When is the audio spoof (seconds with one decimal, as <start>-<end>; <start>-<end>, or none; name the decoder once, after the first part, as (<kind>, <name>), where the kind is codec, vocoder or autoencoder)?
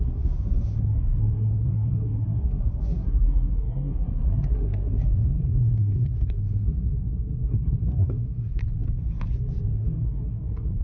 0.0-8.6 (codec, SNAC); 9.8-10.8